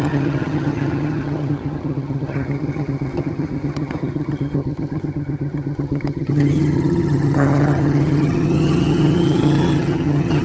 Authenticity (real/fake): fake